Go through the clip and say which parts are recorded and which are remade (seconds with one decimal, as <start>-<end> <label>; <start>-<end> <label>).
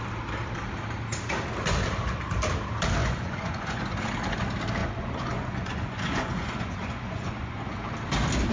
0.0-3.0 recorded; 3.0-4.1 remade; 4.1-4.8 recorded; 4.8-7.8 remade; 7.8-8.5 recorded